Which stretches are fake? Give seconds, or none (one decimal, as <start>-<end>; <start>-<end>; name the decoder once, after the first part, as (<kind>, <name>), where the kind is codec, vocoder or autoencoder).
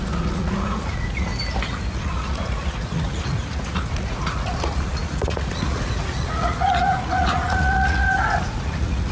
0.0-1.3 (vocoder, Vocos); 2.0-9.1